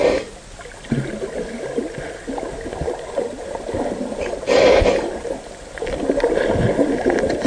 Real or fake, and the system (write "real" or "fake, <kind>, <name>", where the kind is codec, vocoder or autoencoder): real